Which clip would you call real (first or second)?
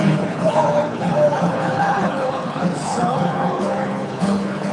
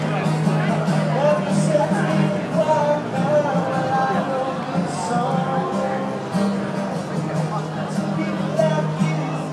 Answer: second